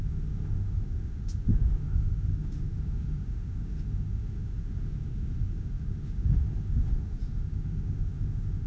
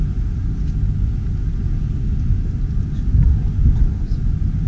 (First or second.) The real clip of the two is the second